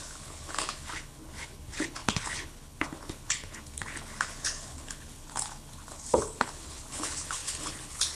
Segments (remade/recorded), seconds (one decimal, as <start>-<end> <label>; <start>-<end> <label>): 0.0-8.2 remade